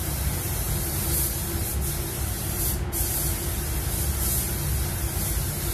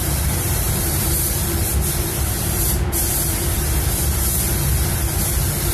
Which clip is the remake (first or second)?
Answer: second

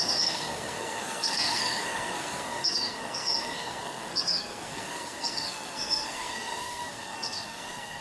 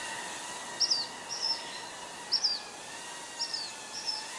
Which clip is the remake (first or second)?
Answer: first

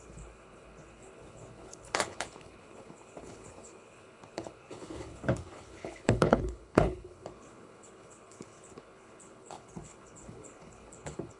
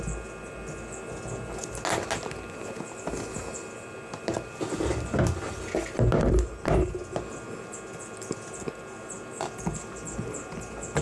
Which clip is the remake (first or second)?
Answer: first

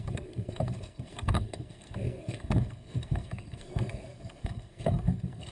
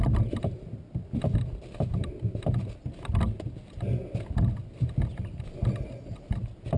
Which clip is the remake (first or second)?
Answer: first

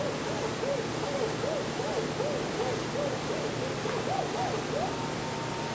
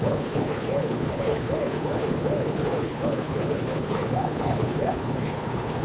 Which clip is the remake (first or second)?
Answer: second